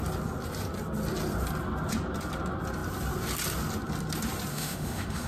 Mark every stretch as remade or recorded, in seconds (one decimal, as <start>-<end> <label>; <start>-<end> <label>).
0.0-4.5 recorded; 4.5-5.3 remade